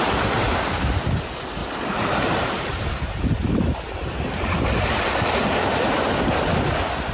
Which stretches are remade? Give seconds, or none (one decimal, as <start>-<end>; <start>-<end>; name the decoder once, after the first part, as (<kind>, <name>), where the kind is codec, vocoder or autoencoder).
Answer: 1.6-5.9 (vocoder, BigVGAN v2)